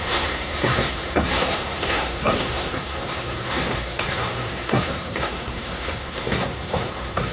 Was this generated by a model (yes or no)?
yes